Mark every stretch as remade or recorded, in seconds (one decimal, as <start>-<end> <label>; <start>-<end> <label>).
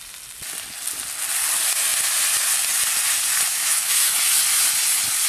0.0-3.5 recorded; 3.5-4.1 remade; 4.1-5.3 recorded